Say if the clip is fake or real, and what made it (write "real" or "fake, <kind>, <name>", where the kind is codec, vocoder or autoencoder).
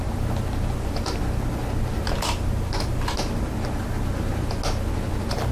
real